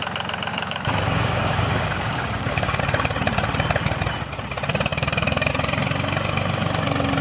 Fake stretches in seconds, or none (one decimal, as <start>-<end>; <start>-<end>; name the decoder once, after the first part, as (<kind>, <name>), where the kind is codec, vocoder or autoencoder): 0.5-2.8 (codec, DAC); 4.9-5.5